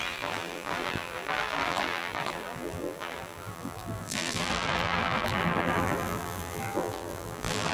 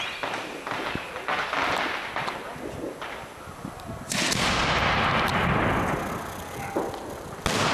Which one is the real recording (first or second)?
second